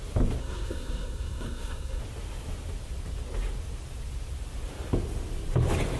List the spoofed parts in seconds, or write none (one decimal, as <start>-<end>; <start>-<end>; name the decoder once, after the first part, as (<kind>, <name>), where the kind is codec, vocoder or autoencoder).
0.4-2.0 (codec, SNAC)